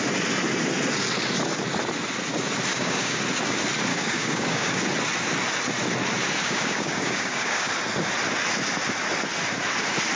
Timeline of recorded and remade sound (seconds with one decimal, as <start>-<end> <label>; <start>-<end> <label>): 0.0-2.7 recorded; 2.7-3.2 remade; 3.2-3.9 recorded; 3.9-4.8 remade; 4.8-6.4 recorded; 6.4-7.7 remade; 7.7-10.2 recorded